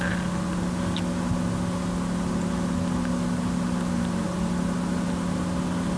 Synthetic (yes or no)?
no